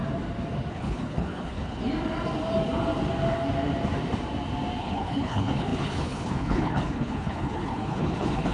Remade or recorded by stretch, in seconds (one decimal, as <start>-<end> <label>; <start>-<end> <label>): 0.0-0.7 recorded; 0.7-1.8 remade; 1.8-4.8 recorded; 4.8-8.5 remade